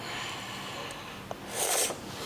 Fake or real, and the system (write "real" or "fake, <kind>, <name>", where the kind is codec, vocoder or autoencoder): real